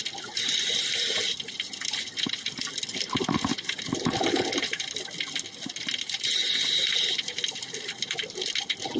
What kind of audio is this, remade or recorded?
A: recorded